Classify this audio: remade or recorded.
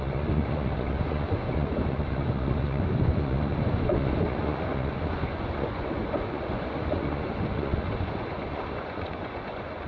remade